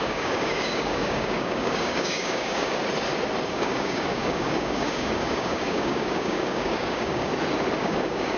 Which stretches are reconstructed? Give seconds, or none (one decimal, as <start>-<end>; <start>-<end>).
0.0-2.8; 3.5-7.3; 7.8-8.4